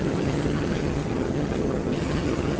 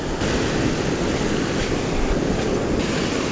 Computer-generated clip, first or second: first